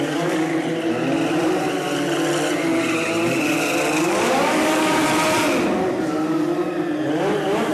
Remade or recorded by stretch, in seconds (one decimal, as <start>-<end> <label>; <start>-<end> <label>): 0.0-0.5 remade; 0.5-4.0 recorded; 4.0-5.0 remade; 5.0-6.0 recorded; 6.0-6.5 remade; 6.5-7.7 recorded